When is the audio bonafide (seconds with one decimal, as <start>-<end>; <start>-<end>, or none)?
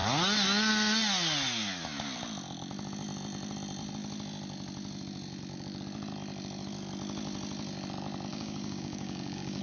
0.0-8.3